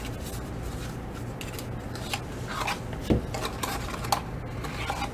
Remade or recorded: recorded